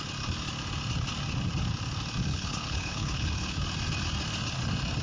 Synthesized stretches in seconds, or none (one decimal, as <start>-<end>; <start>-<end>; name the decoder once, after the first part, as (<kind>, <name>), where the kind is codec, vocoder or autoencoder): 2.3-3.6 (codec, HILCodec)